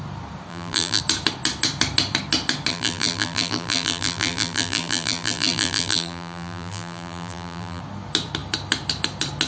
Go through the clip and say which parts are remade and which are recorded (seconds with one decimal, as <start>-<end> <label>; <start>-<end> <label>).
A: 0.0-0.5 recorded; 0.5-1.0 remade; 1.0-2.7 recorded; 2.7-7.8 remade; 7.8-9.5 recorded